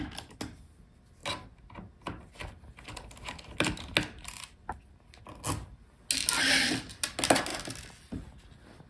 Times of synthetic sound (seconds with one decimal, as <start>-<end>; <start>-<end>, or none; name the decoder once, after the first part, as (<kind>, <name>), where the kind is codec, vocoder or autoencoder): none